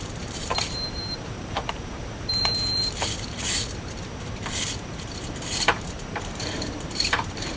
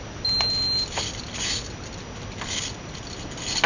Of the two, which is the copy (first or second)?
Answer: first